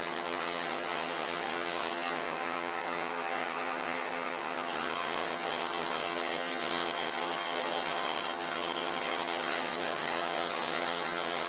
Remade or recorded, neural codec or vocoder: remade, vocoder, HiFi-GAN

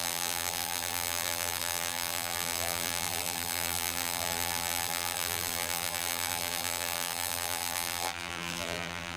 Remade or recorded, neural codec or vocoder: remade, vocoder, BigVGAN v2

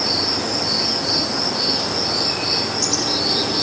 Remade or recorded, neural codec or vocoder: recorded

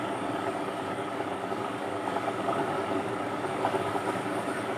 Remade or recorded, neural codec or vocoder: remade, codec, DAC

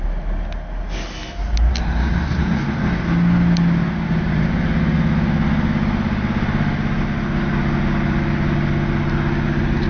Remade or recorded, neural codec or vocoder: recorded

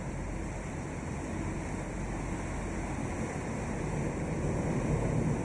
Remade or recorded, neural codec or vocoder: recorded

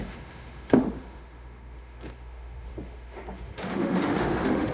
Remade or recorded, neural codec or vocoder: remade, autoencoder, DAC-VAE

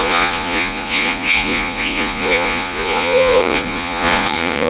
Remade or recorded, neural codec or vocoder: remade, vocoder, Vocos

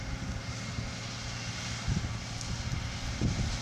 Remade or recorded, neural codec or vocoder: recorded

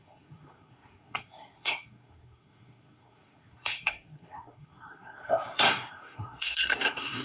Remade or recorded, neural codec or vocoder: remade, codec, SNAC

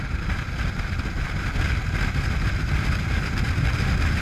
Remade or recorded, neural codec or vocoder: recorded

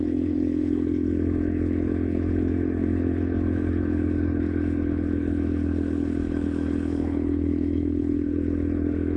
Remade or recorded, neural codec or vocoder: remade, codec, HILCodec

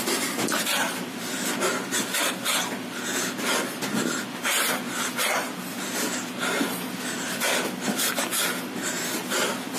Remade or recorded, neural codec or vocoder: recorded